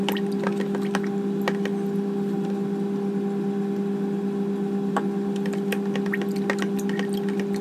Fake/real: real